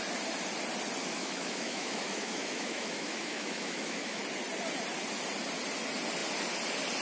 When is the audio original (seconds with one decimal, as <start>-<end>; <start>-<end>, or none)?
0.0-1.0; 4.2-7.0